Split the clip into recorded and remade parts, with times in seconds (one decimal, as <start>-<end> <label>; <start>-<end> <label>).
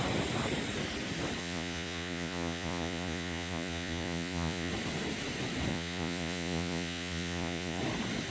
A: 0.0-1.4 recorded; 1.4-4.7 remade; 4.7-5.7 recorded; 5.7-7.8 remade; 7.8-8.3 recorded